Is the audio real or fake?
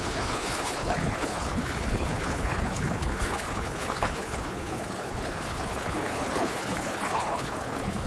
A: fake